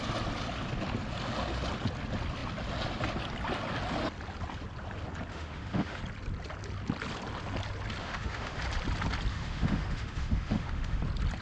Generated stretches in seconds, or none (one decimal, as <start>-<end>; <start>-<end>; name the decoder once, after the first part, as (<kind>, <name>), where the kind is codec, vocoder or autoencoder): 5.3-6.0 (autoencoder, DAC-VAE); 8.0-8.6; 9.3-11.0